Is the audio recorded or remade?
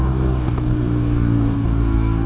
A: remade